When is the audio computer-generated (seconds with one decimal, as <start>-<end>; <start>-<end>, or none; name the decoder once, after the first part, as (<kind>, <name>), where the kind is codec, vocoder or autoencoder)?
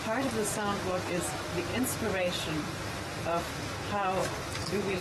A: 1.7-3.5 (vocoder, BigVGAN v2)